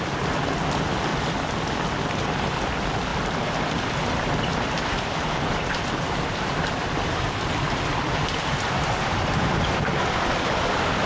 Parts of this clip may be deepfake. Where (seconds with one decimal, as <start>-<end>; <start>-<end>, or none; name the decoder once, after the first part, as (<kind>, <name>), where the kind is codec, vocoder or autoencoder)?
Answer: 0.0-1.1 (vocoder, BigVGAN v2); 1.7-3.1; 4.8-11.1

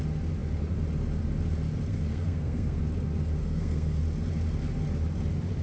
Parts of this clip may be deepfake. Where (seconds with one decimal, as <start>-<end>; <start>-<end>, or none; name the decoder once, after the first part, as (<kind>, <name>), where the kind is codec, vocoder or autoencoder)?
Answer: 1.9-2.8 (codec, SNAC); 3.4-4.0

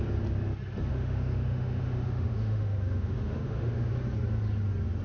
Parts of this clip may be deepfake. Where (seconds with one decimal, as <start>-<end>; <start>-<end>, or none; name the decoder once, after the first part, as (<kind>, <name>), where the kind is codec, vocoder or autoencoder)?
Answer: 0.9-3.9 (autoencoder, DAC-VAE)

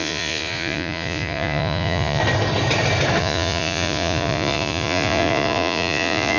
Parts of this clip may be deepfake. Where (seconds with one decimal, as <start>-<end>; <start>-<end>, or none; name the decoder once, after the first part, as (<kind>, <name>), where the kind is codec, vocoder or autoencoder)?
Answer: 0.0-2.2 (vocoder, Vocos); 3.2-6.4

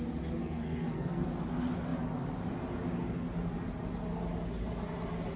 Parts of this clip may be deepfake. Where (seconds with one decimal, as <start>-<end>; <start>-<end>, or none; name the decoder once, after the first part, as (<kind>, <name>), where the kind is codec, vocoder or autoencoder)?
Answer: 0.4-1.2 (codec, SNAC)

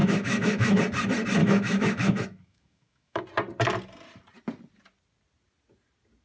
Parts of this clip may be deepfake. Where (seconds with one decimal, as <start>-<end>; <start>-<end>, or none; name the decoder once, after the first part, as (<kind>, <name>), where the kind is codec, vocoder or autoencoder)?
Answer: 0.0-0.8 (autoencoder, DAC-VAE); 1.4-3.2